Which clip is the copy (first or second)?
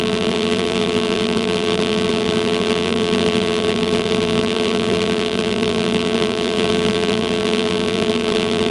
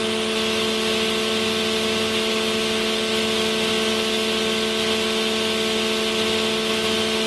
first